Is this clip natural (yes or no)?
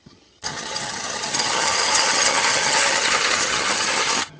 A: no